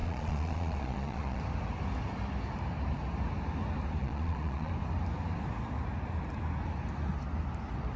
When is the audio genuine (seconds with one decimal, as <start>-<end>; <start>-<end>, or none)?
1.4-4.0; 4.7-8.0